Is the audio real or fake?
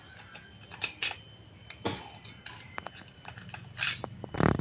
real